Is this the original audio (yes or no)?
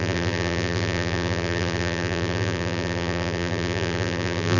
no